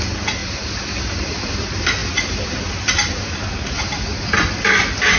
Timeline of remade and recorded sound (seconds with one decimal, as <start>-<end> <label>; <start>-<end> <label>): 0.0-5.2 recorded